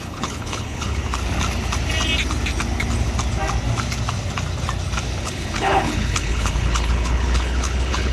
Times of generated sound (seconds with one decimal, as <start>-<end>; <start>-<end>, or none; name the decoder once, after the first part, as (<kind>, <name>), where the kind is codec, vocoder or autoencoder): 0.0-1.0 (codec, HILCodec); 5.2-8.1

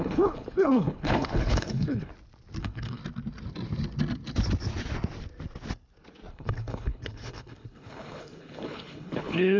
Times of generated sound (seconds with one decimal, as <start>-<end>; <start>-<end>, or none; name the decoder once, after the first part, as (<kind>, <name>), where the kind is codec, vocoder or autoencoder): 0.0-2.1 (codec, HILCodec); 2.6-3.0; 6.3-9.6

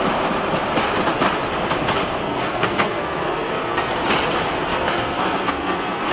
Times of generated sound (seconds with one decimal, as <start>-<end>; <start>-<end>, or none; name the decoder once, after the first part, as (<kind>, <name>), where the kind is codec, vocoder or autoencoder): 2.2-3.9 (codec, SNAC); 4.7-6.1